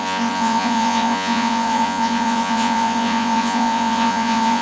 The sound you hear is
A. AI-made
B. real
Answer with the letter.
A